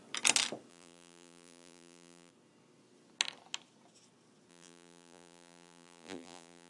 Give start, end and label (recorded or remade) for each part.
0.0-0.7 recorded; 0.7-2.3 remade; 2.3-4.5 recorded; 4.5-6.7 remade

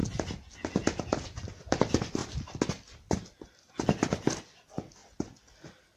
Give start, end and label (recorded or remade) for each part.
0.0-6.0 recorded

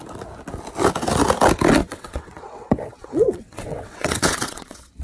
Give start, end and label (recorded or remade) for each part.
0.0-1.8 recorded; 1.8-5.0 remade

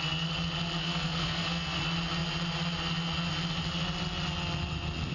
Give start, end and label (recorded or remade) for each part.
0.0-0.8 recorded; 0.8-1.8 remade; 1.8-5.1 recorded

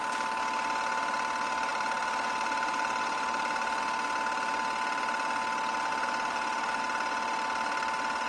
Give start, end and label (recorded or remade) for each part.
0.0-1.7 recorded; 1.7-3.8 remade; 3.8-5.9 recorded; 5.9-6.8 remade; 6.8-8.3 recorded